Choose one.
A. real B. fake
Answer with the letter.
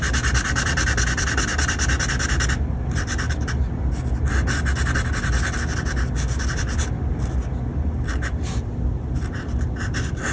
A